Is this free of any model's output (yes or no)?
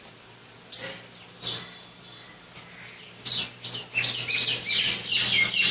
yes